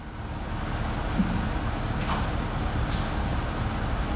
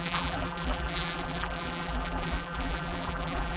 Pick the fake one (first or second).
second